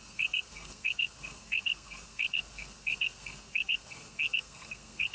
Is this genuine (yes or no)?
no